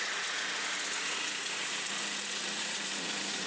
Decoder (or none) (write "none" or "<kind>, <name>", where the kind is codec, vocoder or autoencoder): vocoder, Vocos